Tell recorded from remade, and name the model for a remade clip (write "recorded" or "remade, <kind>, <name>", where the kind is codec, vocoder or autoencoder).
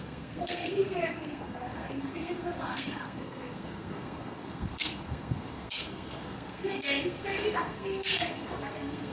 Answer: remade, codec, SNAC